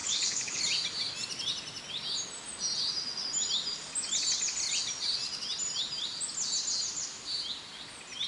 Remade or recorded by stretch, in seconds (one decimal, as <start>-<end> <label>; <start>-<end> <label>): 0.0-0.6 remade; 0.6-8.3 recorded